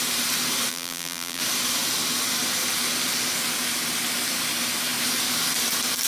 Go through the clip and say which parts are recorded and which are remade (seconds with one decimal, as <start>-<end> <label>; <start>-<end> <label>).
0.0-0.7 recorded; 0.7-1.4 remade; 1.4-6.1 recorded